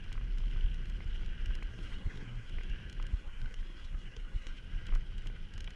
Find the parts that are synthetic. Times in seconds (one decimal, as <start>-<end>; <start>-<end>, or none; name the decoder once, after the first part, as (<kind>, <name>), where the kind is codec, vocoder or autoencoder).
1.7-2.5 (codec, SNAC); 3.1-4.6